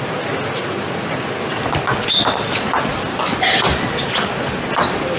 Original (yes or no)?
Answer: yes